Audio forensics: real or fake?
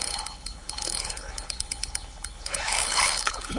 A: fake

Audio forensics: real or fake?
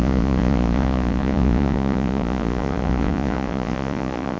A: fake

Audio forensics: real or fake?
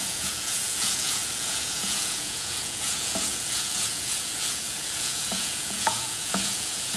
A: fake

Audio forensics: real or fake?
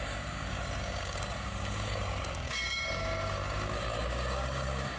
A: fake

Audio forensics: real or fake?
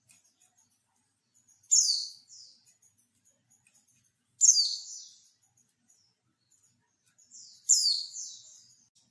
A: real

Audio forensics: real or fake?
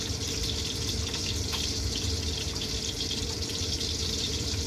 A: fake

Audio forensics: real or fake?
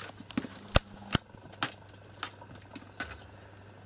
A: real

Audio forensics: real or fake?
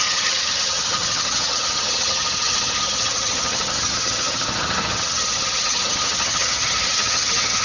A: fake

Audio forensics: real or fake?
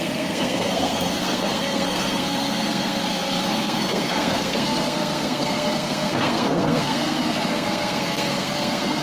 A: fake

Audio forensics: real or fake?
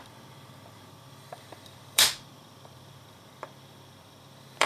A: fake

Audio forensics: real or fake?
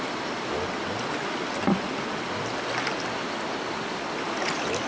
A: real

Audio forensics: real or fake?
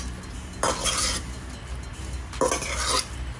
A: real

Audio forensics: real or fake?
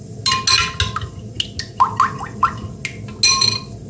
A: real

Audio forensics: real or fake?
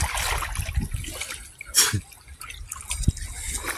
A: real